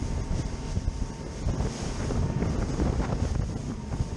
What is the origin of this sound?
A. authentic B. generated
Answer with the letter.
A